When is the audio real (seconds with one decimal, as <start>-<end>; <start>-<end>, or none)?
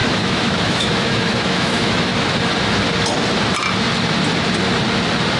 2.1-5.4